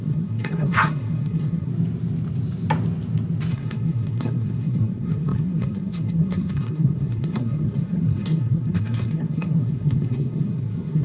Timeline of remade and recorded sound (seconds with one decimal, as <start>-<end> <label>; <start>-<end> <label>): 0.0-1.7 remade; 1.7-3.5 recorded; 3.5-11.0 remade